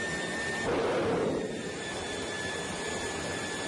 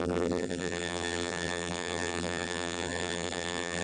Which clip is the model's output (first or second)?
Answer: second